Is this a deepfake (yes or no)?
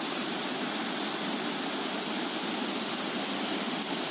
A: no